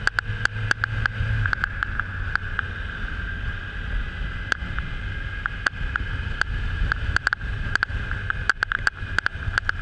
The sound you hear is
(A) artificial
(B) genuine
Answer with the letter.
B